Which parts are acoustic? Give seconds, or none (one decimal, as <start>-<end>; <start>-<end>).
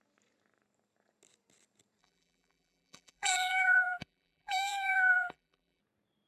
0.0-2.0; 5.8-6.3